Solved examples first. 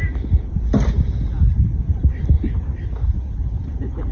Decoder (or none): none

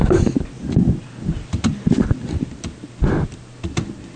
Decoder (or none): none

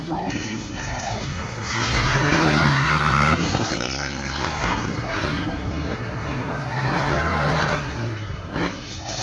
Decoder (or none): codec, SNAC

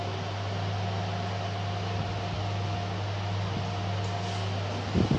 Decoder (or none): none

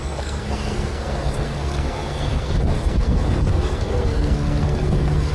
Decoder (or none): codec, SNAC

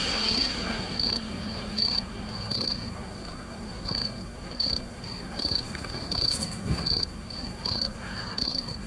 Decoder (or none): codec, SNAC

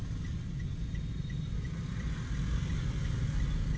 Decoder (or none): none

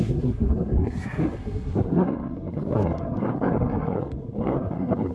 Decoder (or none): codec, SNAC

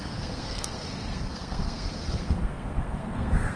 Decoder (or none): codec, SNAC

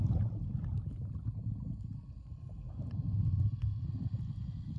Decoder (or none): none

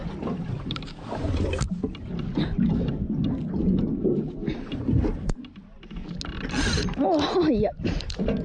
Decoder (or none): none